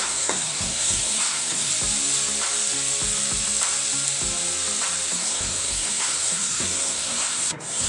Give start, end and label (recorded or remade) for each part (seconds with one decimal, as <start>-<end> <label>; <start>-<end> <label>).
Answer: 0.0-1.7 remade; 1.7-5.1 recorded; 5.1-7.9 remade